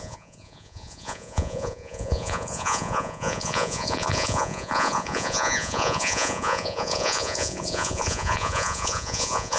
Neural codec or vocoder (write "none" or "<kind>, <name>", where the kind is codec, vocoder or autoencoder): vocoder, Vocos